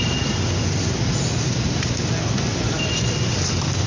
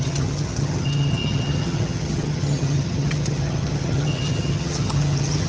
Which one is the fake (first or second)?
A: second